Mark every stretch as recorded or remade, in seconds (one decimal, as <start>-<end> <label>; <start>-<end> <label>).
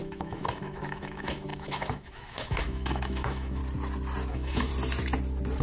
0.0-3.6 remade; 3.6-4.3 recorded; 4.3-4.7 remade; 4.7-5.6 recorded